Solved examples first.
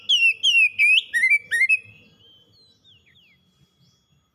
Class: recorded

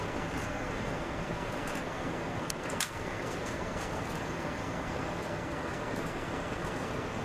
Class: remade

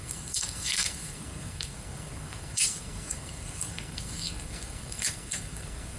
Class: remade